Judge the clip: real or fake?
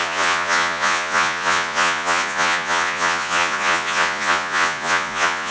fake